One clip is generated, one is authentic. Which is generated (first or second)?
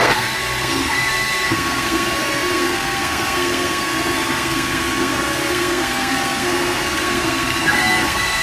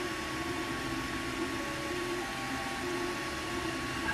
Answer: first